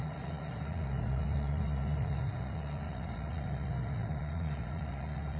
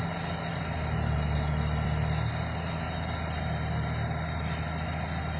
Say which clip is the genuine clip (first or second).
second